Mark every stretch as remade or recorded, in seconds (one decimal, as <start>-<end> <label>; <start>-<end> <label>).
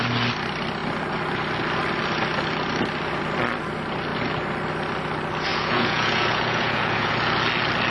0.0-5.5 recorded; 5.5-7.1 remade; 7.1-7.9 recorded